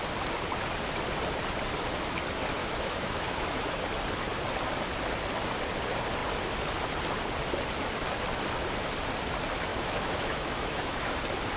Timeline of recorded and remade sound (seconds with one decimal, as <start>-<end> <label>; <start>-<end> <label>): 0.0-2.6 recorded; 2.6-3.8 remade; 3.8-9.7 recorded; 9.7-11.2 remade; 11.2-11.6 recorded